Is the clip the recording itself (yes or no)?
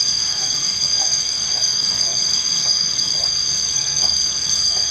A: no